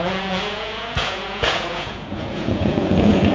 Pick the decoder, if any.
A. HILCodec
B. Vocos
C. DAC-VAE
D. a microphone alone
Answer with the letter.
B